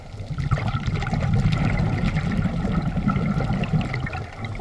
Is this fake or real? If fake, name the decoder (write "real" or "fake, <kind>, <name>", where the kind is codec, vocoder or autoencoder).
real